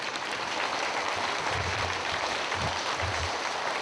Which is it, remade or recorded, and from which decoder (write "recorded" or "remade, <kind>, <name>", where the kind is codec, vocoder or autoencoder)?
remade, vocoder, BigVGAN v2